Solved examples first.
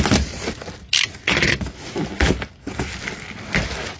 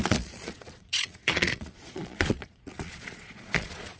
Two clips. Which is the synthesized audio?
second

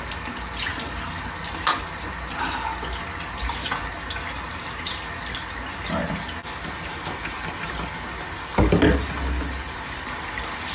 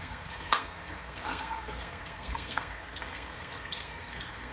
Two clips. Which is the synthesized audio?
second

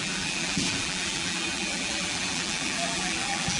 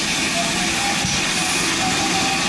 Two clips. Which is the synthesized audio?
first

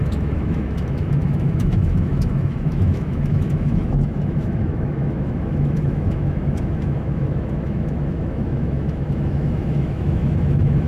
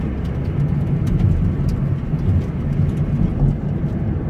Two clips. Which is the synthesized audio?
first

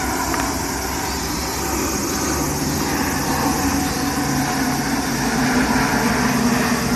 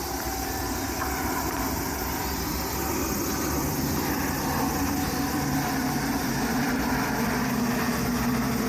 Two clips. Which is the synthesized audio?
second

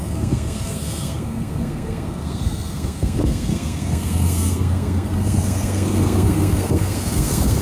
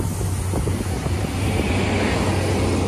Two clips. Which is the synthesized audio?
first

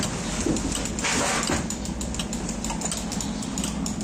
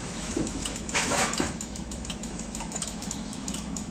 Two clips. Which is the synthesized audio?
second